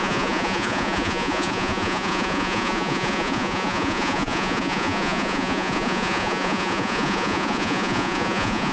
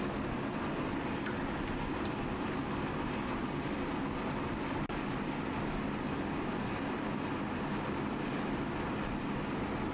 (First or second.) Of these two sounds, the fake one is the first